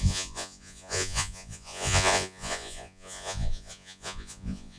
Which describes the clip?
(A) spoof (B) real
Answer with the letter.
A